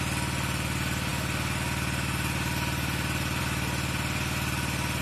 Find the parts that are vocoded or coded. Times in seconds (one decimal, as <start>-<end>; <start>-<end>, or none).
none